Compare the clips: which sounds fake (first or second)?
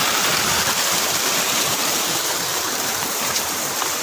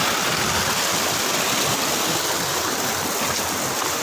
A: first